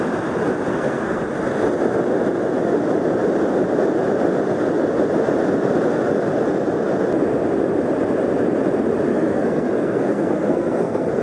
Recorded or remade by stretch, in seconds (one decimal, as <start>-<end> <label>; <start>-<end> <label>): 0.0-0.7 recorded; 0.7-1.2 remade; 1.2-9.1 recorded; 9.1-11.2 remade